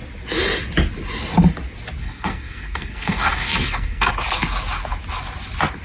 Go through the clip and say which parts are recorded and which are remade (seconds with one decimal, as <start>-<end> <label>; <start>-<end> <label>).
0.0-2.0 recorded; 2.0-4.1 remade; 4.1-5.8 recorded